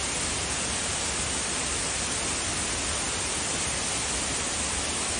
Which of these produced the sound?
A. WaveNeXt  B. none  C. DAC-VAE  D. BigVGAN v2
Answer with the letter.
B